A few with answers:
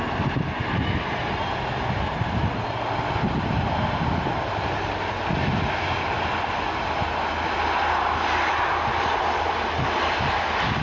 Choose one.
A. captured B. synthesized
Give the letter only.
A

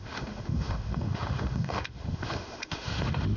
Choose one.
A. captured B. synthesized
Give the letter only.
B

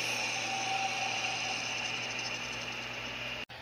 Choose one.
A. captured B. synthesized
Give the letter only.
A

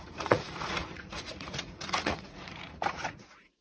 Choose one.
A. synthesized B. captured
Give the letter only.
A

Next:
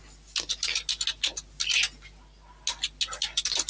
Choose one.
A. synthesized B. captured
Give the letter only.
B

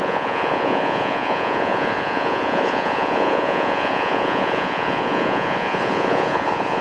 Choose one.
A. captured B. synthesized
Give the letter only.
B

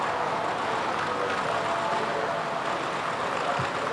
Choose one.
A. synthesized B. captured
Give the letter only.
B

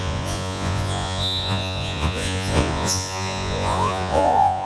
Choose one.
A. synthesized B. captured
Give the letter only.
A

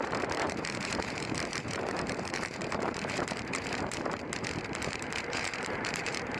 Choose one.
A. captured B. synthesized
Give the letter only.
B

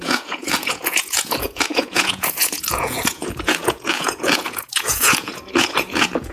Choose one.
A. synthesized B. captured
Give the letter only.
A